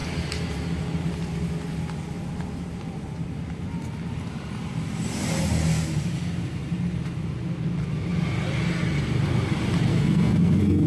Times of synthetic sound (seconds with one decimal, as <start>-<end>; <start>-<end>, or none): 9.9-10.9